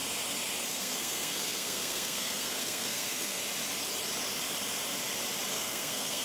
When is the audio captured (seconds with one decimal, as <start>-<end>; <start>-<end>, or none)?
0.0-0.7; 3.4-5.5